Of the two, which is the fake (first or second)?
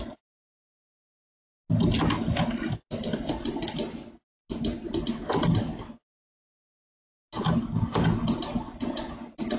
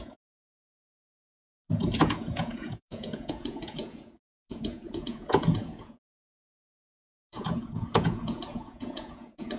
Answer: second